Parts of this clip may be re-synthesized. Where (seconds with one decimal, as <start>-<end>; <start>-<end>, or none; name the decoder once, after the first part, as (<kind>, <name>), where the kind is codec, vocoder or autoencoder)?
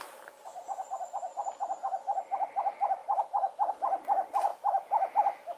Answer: none